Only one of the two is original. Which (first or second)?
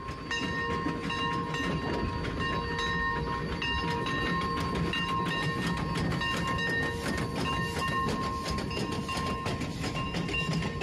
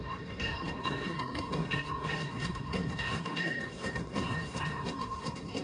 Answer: first